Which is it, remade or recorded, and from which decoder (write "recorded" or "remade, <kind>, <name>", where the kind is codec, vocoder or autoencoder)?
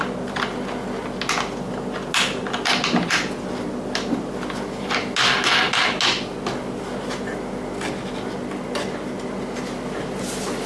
recorded